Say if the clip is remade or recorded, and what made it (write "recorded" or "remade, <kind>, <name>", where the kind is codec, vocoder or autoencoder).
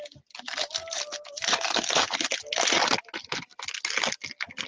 recorded